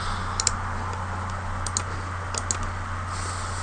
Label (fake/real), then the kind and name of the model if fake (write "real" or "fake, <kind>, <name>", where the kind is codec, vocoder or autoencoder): real